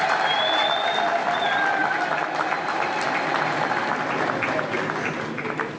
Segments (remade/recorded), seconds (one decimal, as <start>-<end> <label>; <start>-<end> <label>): 0.0-5.8 recorded